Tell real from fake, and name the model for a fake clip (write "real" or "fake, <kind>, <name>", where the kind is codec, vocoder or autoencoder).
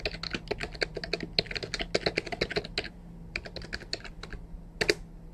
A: real